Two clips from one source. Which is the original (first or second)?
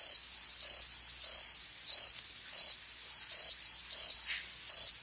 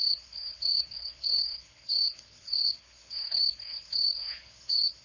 first